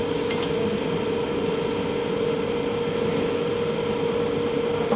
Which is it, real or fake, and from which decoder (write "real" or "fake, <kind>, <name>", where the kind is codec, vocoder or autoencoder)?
real